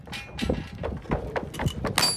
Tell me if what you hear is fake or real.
real